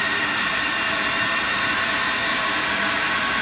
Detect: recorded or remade recorded